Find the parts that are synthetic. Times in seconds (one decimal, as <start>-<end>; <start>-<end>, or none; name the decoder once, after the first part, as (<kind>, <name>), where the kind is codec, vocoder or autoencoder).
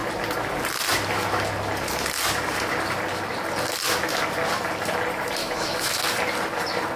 5.4-6.0 (autoencoder, DAC-VAE)